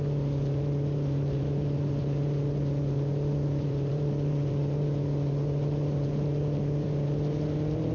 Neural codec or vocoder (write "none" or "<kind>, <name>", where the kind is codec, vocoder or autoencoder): vocoder, BigVGAN v2